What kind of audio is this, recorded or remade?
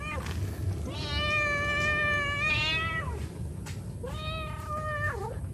recorded